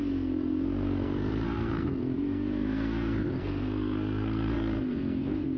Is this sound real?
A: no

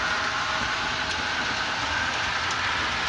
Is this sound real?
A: yes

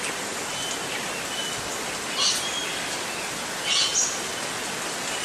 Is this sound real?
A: yes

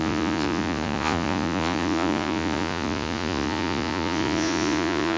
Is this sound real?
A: no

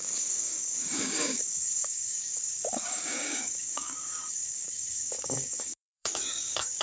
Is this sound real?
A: no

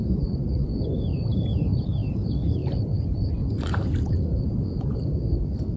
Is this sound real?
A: no